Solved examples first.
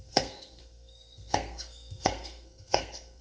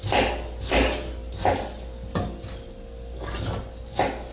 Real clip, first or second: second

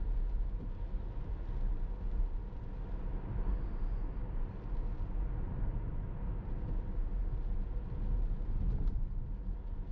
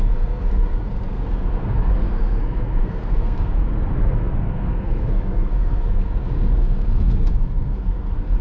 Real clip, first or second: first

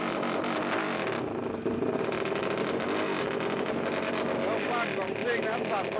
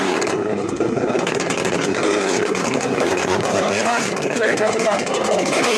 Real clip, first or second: first